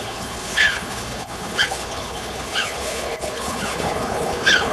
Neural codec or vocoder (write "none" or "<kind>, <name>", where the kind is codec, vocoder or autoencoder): codec, HILCodec